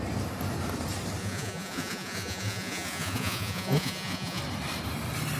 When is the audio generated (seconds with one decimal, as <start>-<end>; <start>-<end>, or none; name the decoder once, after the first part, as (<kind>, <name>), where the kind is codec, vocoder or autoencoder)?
1.2-4.4 (vocoder, Vocos)